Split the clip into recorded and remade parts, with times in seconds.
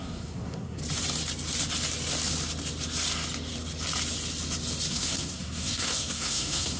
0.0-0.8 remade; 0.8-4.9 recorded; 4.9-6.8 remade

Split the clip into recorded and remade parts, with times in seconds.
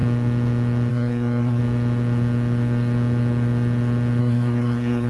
0.0-0.9 recorded; 0.9-1.6 remade; 1.6-4.2 recorded; 4.2-5.1 remade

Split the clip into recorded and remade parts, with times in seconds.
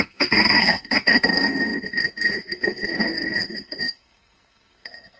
0.0-5.2 remade